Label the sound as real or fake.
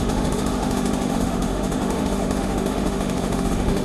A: fake